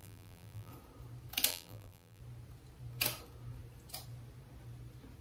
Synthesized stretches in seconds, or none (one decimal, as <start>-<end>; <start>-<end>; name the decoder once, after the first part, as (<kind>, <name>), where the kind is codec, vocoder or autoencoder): 0.0-0.7 (vocoder, BigVGAN v2); 1.5-2.2